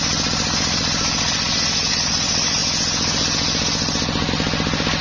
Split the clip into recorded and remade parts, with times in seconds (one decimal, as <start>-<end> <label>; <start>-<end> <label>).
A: 0.0-2.6 remade; 2.6-4.3 recorded; 4.3-5.0 remade